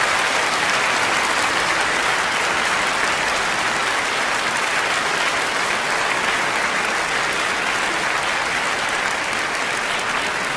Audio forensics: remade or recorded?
recorded